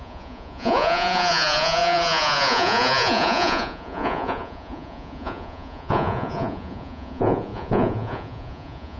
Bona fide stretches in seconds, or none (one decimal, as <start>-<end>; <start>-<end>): none